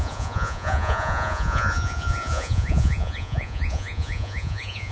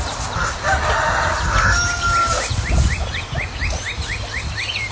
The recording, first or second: second